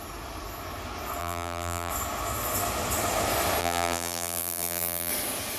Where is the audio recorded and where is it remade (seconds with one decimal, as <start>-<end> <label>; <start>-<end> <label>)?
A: 0.0-1.2 recorded; 1.2-1.9 remade; 1.9-3.6 recorded; 3.6-5.1 remade; 5.1-5.6 recorded